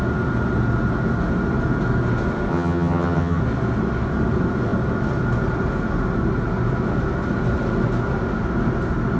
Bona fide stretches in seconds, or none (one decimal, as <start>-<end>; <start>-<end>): 0.0-2.5; 3.4-9.2